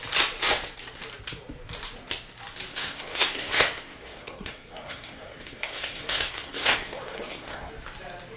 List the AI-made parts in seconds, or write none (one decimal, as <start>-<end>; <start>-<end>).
2.7-7.7